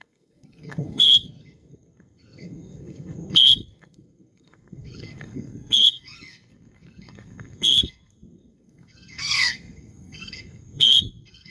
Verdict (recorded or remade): remade